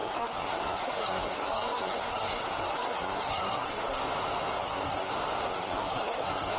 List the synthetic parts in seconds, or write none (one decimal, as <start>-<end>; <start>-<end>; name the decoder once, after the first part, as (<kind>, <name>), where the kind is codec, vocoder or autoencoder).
0.0-4.0 (codec, SNAC); 4.6-5.1; 5.5-6.6